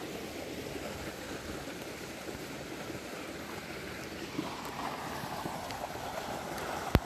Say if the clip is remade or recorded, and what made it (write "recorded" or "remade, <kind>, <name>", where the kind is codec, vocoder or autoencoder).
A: recorded